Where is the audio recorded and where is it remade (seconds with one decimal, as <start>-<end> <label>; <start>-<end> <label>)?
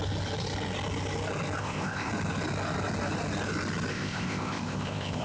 0.0-1.6 recorded; 1.6-2.1 remade; 2.1-3.9 recorded; 3.9-5.2 remade